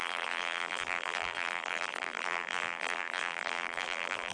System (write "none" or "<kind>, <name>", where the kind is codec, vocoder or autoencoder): vocoder, BigVGAN v2